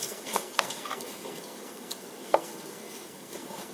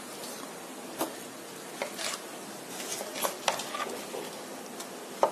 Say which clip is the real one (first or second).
second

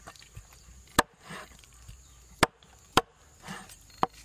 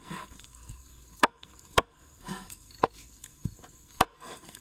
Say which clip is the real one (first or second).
first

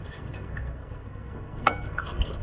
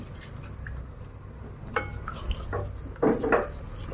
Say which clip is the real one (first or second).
second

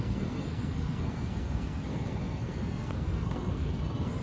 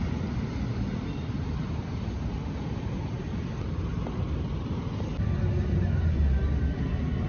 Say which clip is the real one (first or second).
second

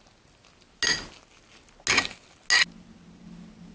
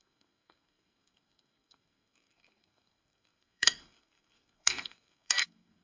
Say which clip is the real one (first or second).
first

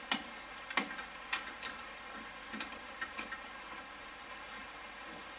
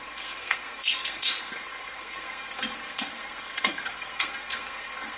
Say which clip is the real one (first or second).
first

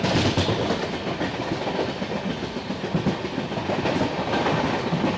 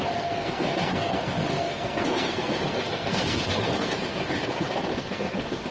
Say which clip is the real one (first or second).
first